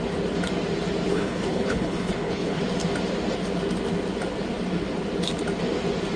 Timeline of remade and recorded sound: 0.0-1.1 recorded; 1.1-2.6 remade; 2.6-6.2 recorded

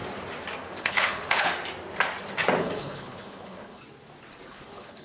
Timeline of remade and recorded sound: 0.0-0.8 recorded; 0.8-1.5 remade; 1.5-2.6 recorded; 2.6-3.8 remade; 3.8-4.5 recorded; 4.5-5.0 remade

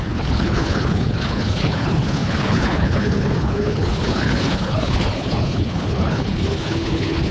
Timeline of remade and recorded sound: 0.0-7.3 remade

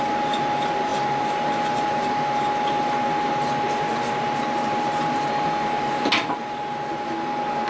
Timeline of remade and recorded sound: 0.0-7.7 recorded

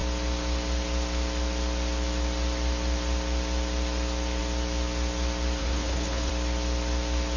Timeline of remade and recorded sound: 0.0-5.6 recorded; 5.6-6.3 remade; 6.3-7.4 recorded